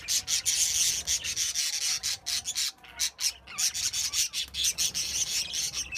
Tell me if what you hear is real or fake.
real